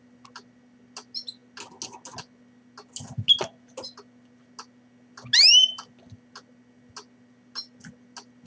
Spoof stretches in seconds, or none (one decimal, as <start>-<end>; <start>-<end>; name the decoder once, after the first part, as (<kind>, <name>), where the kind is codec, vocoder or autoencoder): none